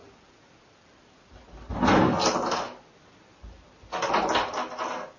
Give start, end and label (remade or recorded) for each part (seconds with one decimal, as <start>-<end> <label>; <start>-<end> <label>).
0.0-5.2 recorded